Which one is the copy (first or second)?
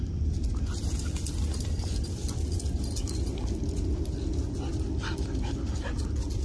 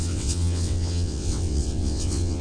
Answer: second